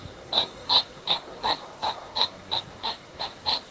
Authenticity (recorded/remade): remade